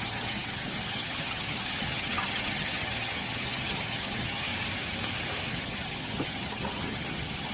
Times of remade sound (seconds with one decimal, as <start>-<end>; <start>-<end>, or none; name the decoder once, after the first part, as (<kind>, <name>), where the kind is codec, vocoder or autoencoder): 0.0-4.5 (vocoder, HiFi-GAN); 5.5-7.5